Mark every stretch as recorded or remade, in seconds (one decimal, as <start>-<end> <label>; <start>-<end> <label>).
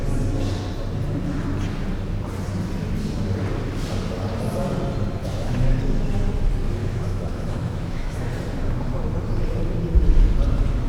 0.0-5.2 recorded; 5.2-5.8 remade; 5.8-6.8 recorded; 6.8-8.2 remade; 8.2-10.9 recorded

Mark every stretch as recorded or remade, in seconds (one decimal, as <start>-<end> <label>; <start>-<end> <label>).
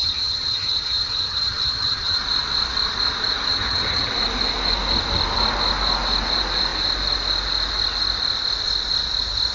0.0-2.2 remade; 2.2-3.5 recorded; 3.5-4.1 remade; 4.1-9.5 recorded